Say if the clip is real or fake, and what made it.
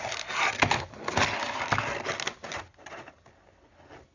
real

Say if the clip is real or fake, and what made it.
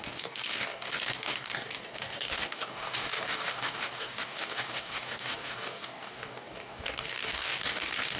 fake, codec, DAC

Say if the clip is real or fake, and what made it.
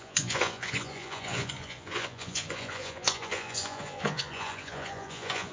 fake, vocoder, Vocos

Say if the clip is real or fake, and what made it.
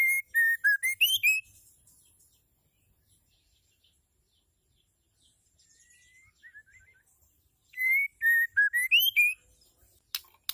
real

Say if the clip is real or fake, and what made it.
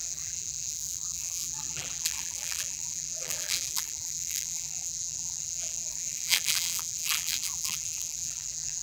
fake, vocoder, BigVGAN v2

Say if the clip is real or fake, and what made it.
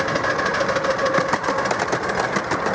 real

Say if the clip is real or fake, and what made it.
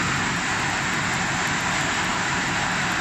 real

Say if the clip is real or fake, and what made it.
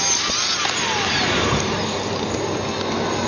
real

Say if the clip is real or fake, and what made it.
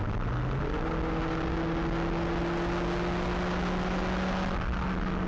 real